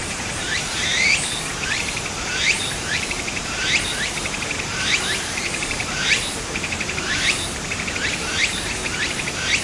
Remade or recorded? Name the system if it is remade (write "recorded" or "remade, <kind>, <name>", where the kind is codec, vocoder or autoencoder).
remade, vocoder, BigVGAN v2